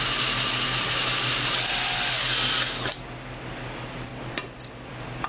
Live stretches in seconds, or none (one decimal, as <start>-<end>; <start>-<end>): 0.0-5.3